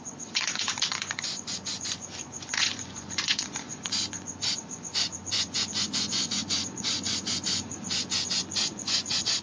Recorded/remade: remade